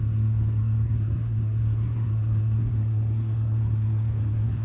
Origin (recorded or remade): remade